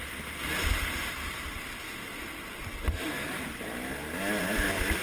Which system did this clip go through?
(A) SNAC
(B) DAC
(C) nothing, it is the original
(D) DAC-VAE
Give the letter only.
C